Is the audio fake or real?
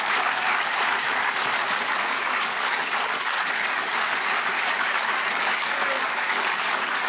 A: fake